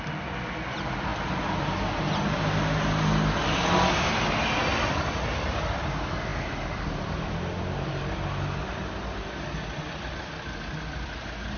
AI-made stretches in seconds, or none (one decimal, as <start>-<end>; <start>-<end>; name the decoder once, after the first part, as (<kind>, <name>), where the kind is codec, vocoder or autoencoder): none